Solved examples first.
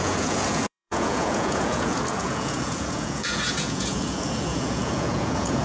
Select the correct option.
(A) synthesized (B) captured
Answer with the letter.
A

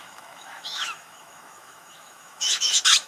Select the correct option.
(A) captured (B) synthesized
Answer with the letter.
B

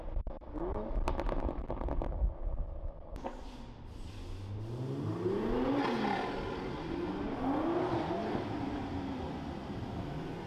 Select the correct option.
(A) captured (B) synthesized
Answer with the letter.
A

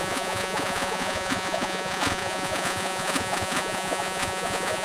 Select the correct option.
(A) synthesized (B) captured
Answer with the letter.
A